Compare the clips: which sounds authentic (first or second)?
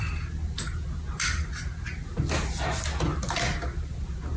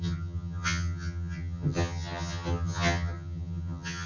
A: first